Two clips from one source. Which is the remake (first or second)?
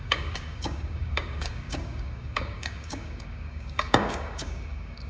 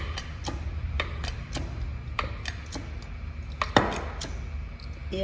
first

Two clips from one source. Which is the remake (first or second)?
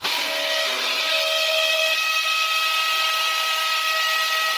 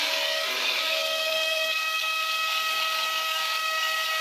second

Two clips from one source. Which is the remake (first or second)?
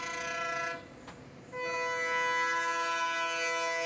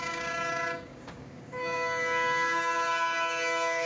second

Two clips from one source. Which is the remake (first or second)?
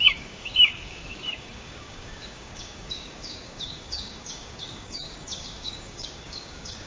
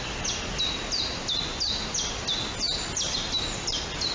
first